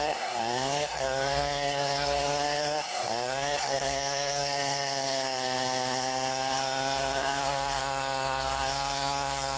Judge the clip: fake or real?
fake